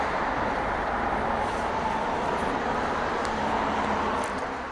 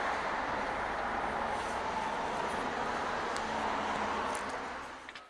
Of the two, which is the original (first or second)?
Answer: second